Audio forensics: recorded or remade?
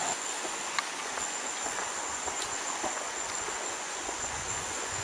remade